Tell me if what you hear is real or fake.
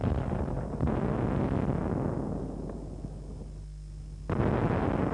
real